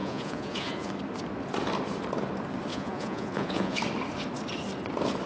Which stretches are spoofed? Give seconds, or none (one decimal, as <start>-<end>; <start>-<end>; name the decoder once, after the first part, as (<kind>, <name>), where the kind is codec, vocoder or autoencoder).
0.0-0.9 (vocoder, Vocos); 2.7-3.8